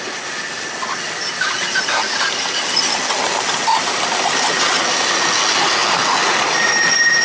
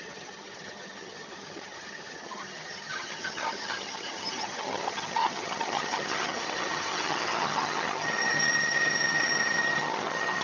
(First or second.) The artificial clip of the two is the second